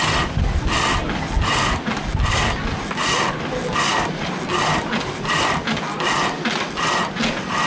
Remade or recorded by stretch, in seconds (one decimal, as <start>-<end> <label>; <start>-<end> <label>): 0.0-7.7 recorded